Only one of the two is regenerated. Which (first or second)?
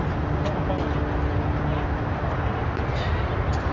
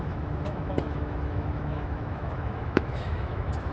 second